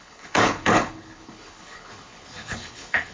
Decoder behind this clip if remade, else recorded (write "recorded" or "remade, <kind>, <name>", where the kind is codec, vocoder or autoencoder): remade, codec, HILCodec